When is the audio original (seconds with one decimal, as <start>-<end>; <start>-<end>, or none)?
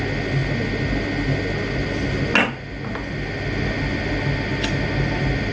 0.0-5.5